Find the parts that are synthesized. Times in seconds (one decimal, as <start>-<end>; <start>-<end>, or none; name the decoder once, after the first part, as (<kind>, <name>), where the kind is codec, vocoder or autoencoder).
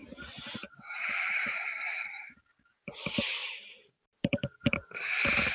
0.0-5.5 (vocoder, BigVGAN v2)